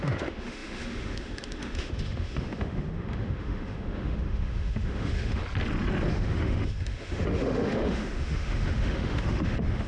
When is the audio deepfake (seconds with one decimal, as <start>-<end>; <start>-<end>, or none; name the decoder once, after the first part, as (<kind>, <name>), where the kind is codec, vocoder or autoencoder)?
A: 0.0-5.4 (autoencoder, DAC-VAE); 6.1-9.9